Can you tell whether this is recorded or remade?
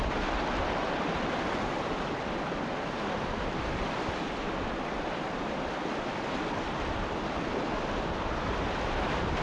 recorded